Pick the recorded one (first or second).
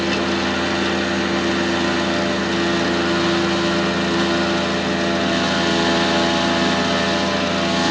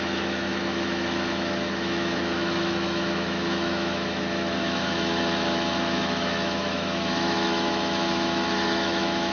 first